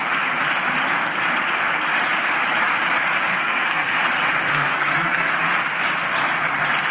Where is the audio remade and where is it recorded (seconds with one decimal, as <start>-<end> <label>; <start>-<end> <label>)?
0.0-3.3 recorded; 3.3-4.0 remade; 4.0-4.5 recorded; 4.5-5.3 remade; 5.3-6.9 recorded